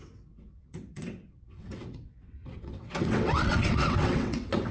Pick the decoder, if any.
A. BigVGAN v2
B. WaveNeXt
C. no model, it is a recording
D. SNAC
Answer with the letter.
B